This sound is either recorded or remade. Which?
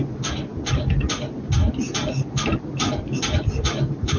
recorded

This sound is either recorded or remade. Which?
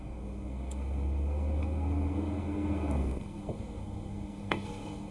remade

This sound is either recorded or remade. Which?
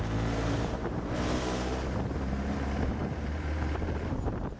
remade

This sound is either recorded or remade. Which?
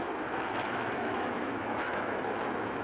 remade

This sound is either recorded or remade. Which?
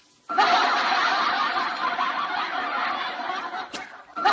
recorded